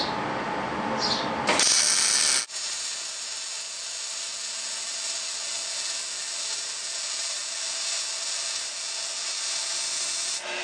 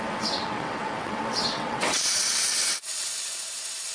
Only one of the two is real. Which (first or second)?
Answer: first